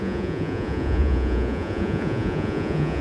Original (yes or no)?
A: no